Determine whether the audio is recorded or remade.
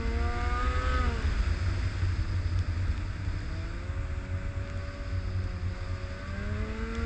recorded